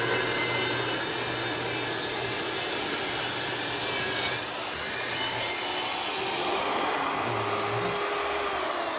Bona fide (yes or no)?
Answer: yes